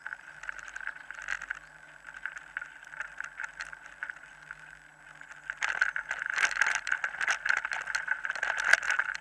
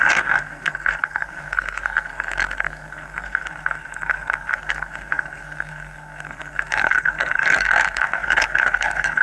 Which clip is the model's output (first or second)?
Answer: second